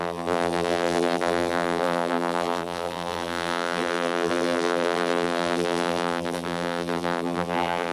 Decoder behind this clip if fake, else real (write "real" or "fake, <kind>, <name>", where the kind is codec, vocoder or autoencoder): fake, vocoder, BigVGAN v2